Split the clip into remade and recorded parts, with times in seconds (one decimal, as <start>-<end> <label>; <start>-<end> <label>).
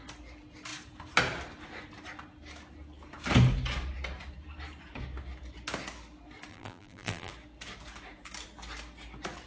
0.0-6.5 recorded; 6.5-7.3 remade; 7.3-9.5 recorded